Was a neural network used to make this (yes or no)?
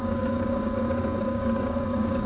yes